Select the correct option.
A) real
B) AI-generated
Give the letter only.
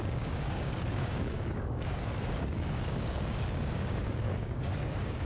B